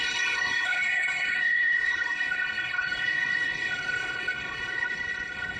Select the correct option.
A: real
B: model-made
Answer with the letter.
B